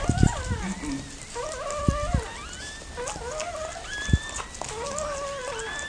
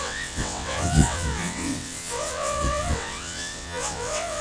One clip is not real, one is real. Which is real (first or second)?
first